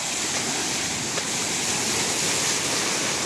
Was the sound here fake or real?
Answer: real